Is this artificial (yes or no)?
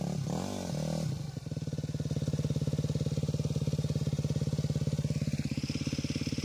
no